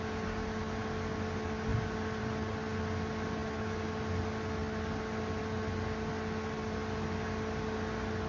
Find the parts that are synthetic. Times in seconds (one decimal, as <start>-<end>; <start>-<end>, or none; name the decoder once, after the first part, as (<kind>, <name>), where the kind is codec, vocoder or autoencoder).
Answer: none